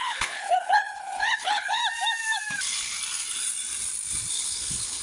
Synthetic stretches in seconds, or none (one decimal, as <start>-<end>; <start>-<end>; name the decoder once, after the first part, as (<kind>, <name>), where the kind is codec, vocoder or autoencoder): 0.0-1.8 (codec, HILCodec); 4.3-5.0